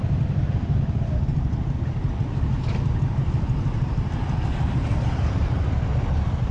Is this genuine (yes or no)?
yes